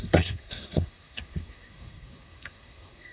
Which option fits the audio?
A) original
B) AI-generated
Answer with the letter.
B